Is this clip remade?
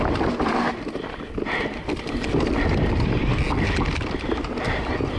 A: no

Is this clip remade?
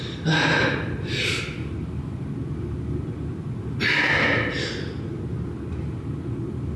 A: no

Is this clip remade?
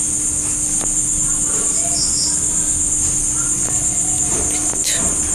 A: no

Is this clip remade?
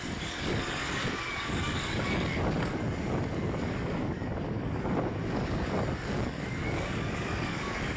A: yes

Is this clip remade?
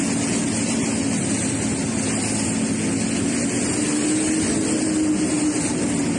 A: no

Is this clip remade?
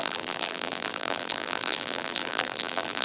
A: yes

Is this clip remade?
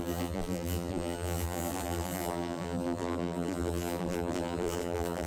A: yes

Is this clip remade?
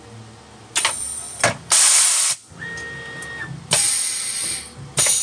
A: no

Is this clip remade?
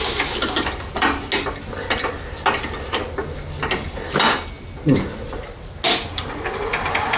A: no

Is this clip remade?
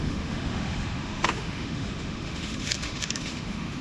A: yes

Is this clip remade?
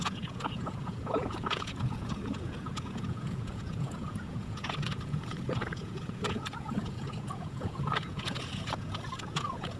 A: yes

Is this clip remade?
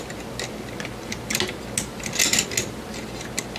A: no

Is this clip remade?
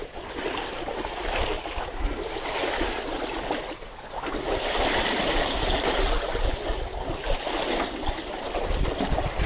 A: no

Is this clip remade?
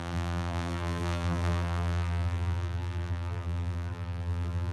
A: yes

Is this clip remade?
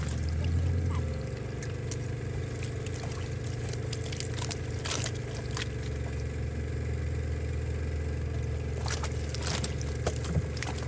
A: no